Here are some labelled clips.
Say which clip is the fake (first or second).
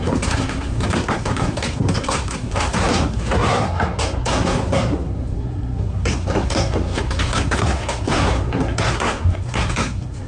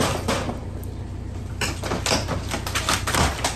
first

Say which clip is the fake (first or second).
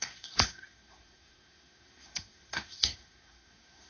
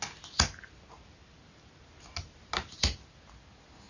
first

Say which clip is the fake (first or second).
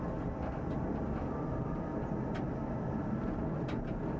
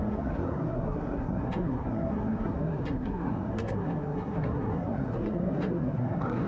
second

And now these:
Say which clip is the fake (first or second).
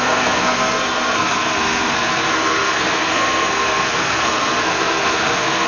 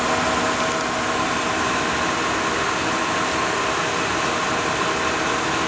first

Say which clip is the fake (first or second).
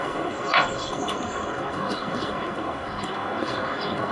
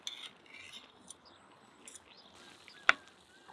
first